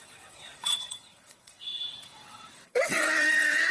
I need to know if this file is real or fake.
fake